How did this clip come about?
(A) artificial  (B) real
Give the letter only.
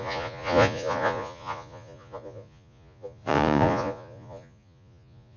A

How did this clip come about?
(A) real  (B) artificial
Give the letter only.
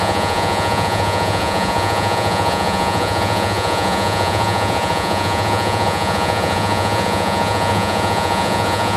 B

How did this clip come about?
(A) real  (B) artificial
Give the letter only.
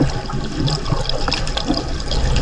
A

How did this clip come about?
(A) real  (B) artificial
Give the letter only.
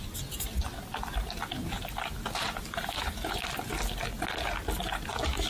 A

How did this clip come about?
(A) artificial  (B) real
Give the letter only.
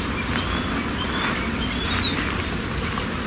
B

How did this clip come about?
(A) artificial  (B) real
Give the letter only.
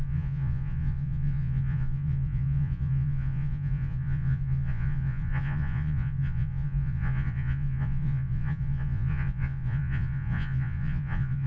A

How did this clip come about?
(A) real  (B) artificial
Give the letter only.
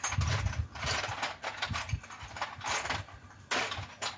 A